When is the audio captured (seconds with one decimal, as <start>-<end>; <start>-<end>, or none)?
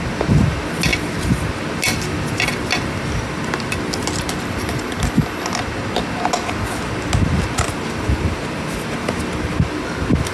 0.0-10.3